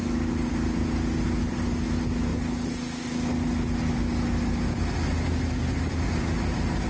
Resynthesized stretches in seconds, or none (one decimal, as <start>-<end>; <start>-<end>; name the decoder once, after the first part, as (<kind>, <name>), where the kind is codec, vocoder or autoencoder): none